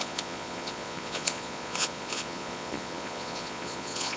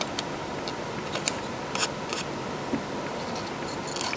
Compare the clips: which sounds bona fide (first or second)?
second